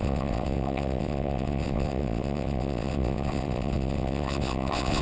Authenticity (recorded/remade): remade